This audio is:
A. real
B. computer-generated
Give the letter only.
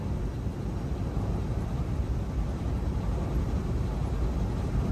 A